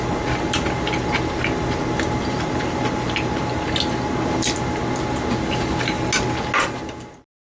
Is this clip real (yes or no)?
yes